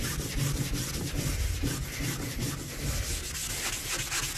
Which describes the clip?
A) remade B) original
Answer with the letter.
B